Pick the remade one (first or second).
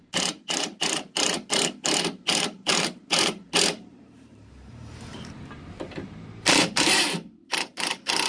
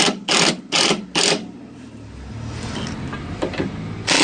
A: first